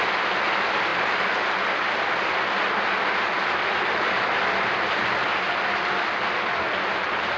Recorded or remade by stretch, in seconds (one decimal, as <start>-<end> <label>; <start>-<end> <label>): 0.0-7.4 recorded